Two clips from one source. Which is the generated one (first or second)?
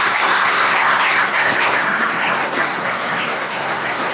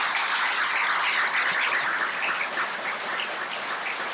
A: first